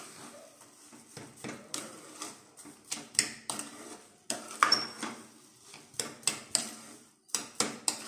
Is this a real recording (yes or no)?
yes